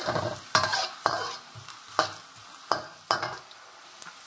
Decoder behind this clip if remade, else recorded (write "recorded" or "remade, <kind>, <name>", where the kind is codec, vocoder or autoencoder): recorded